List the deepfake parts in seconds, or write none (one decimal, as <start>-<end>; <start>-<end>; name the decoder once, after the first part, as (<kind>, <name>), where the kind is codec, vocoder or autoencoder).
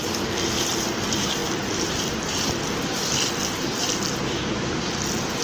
none